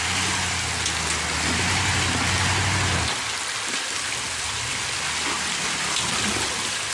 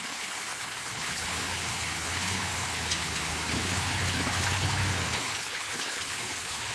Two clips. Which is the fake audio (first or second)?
second